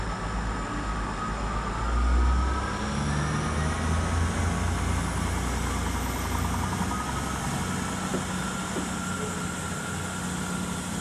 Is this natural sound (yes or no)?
yes